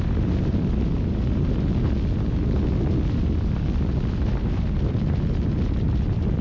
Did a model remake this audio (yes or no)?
no